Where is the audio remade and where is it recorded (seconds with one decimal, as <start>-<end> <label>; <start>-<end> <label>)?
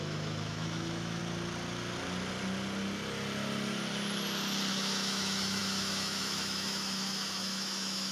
0.0-1.2 remade; 1.2-4.7 recorded; 4.7-8.1 remade